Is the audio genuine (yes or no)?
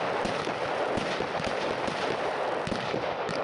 yes